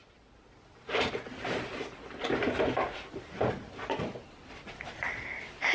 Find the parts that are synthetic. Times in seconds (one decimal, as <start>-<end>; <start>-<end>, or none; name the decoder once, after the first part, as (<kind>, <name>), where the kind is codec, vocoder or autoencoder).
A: none